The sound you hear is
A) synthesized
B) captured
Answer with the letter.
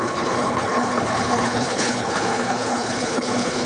A